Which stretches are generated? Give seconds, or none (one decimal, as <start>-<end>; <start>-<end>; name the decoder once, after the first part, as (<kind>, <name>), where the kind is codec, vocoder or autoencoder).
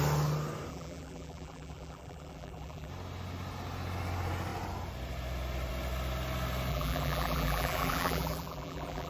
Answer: 0.7-2.9 (vocoder, BigVGAN v2); 6.7-9.1